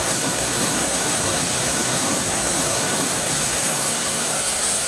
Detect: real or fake fake